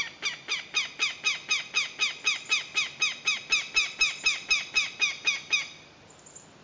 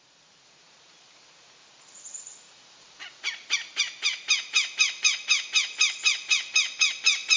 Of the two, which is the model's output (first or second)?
second